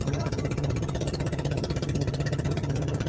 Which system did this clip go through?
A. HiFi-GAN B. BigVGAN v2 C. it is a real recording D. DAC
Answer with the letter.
A